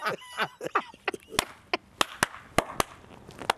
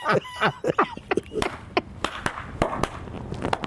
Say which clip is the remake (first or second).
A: second